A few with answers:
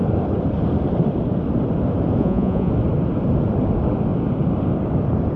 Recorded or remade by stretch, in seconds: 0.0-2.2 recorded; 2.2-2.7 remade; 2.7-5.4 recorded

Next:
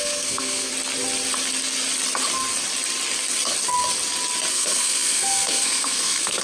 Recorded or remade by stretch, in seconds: 0.0-0.7 remade; 0.7-4.5 recorded; 4.5-6.4 remade

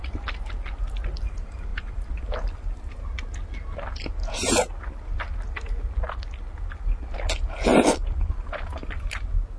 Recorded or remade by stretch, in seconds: 0.0-1.7 recorded; 1.7-3.0 remade; 3.0-7.7 recorded; 7.7-9.1 remade; 9.1-9.6 recorded

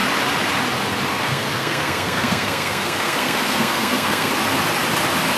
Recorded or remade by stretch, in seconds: 0.0-1.1 recorded; 1.1-4.3 remade; 4.3-5.4 recorded